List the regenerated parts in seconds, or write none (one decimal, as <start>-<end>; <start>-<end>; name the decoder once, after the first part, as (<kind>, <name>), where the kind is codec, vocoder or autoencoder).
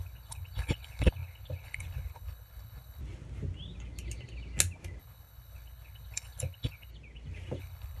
0.0-3.0 (codec, HILCodec); 5.0-6.9; 7.6-8.0